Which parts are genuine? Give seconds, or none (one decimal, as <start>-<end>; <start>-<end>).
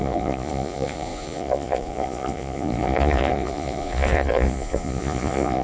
none